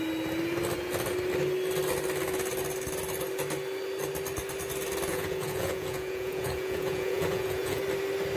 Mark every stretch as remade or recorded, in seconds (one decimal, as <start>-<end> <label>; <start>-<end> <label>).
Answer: 0.0-5.1 recorded; 5.1-7.8 remade; 7.8-8.4 recorded